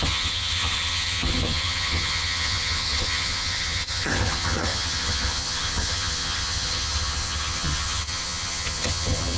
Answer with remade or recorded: remade